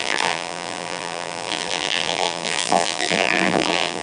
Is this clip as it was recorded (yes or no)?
no